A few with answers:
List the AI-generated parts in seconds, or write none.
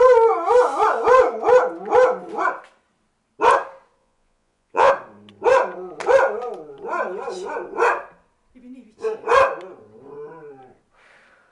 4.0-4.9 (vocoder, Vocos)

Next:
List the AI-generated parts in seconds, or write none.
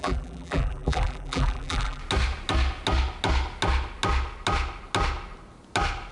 0.0-2.0 (vocoder, BigVGAN v2)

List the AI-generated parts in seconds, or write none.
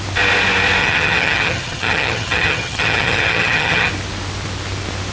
0.8-3.9 (vocoder, HiFi-GAN)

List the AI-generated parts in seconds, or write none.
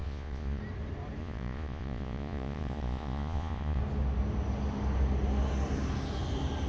0.0-0.6 (vocoder, Vocos); 1.2-3.8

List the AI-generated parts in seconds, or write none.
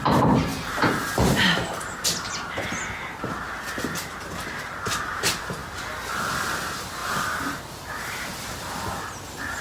7.0-8.6 (vocoder, BigVGAN v2)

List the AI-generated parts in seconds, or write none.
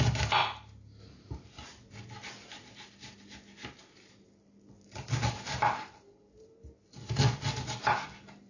none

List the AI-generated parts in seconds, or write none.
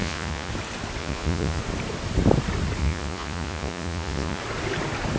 0.0-0.5 (vocoder, Vocos); 1.0-1.6; 2.8-4.4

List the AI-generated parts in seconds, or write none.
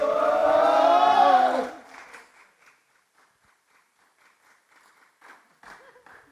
0.4-2.4 (vocoder, BigVGAN v2)